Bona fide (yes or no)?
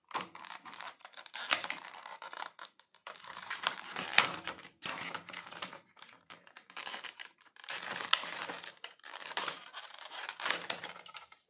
no